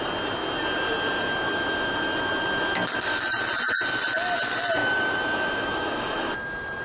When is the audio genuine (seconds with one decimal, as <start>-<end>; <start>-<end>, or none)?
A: 0.0-4.8; 6.3-6.8